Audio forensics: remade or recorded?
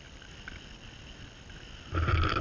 recorded